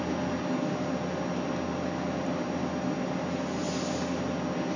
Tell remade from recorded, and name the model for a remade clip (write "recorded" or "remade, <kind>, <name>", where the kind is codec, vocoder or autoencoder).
recorded